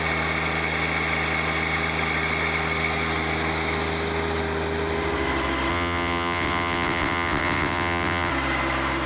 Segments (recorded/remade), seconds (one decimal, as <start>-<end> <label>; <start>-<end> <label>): 0.0-5.7 recorded; 5.7-8.3 remade; 8.3-9.1 recorded